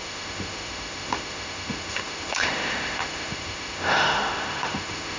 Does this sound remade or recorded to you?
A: remade